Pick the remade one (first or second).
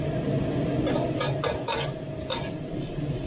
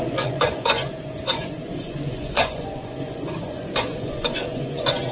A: second